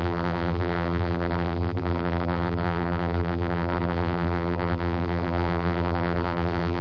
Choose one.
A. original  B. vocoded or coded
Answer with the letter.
B